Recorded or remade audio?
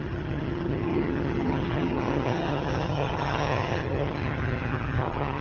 remade